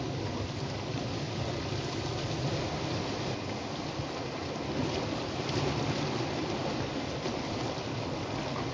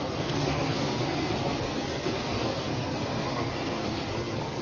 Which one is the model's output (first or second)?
second